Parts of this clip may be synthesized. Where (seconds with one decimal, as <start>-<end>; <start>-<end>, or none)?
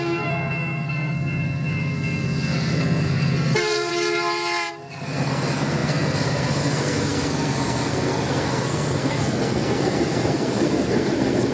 0.0-3.9; 4.7-11.5